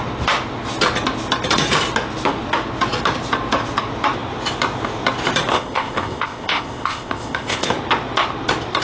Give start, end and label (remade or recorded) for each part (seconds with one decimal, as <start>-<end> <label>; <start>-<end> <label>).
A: 0.0-5.5 recorded; 5.5-7.7 remade; 7.7-8.8 recorded